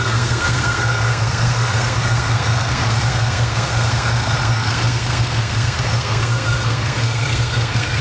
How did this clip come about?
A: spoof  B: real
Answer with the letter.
A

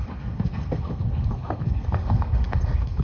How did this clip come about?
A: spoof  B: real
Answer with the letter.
A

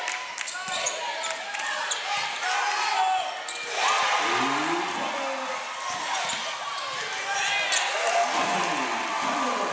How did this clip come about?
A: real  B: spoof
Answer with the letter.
A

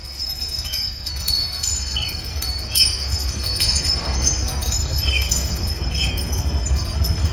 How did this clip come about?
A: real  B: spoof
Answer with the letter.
B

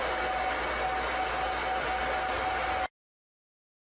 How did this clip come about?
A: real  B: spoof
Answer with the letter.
A